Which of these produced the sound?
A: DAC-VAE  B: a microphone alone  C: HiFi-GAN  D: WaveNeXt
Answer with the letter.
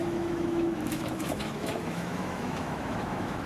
A